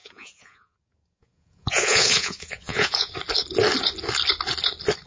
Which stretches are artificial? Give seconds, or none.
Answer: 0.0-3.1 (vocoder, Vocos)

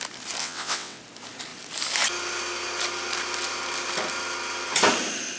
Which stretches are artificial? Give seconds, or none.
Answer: 0.4-1.0 (vocoder, WaveNeXt)

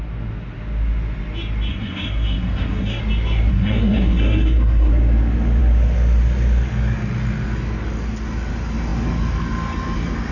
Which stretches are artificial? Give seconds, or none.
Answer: 1.7-3.0 (codec, SNAC); 3.5-4.9

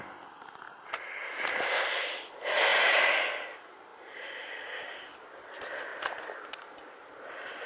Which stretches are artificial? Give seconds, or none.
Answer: 3.9-4.5 (vocoder, BigVGAN v2)

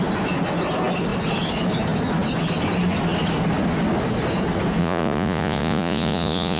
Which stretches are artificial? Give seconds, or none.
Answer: 4.8-6.6 (vocoder, Vocos)